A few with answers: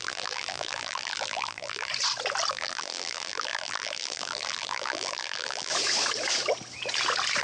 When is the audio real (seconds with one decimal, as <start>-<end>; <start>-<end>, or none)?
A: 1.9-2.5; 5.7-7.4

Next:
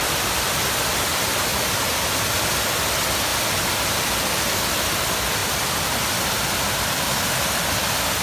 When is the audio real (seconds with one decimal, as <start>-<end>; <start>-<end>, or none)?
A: 0.0-1.5; 2.1-5.4; 5.9-8.2

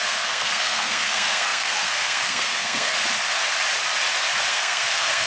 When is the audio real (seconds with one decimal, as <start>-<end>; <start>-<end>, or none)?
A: 2.9-4.5

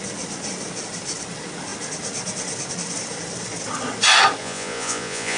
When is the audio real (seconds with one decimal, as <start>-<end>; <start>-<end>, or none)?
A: 0.0-4.4

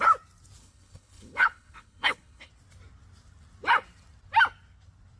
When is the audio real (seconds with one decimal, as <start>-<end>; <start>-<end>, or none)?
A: 0.0-0.6; 2.5-5.2

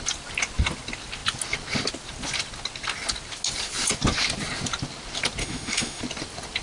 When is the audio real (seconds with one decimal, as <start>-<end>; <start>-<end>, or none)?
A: 0.0-5.4; 6.0-6.6

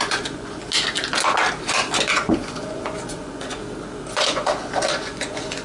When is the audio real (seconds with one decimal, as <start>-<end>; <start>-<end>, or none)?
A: 0.6-2.1; 3.6-4.1

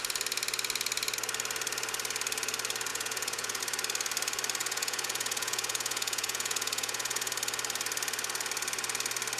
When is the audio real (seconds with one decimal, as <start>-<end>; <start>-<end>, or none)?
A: 0.0-2.9; 3.6-4.6; 7.3-9.4